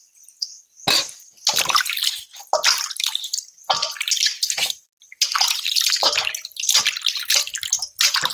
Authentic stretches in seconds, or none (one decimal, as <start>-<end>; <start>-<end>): 0.0-8.3